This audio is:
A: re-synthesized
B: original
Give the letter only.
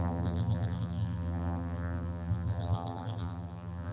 A